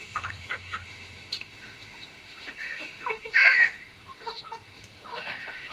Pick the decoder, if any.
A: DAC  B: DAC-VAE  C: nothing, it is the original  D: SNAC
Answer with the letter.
B